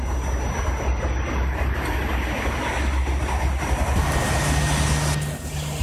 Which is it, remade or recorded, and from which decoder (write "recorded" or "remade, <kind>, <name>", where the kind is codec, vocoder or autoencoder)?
recorded